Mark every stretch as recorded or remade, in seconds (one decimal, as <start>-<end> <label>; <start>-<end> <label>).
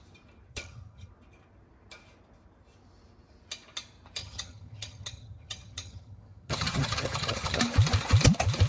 0.0-0.5 recorded; 0.5-1.1 remade; 1.1-4.2 recorded; 4.2-7.6 remade; 7.6-8.7 recorded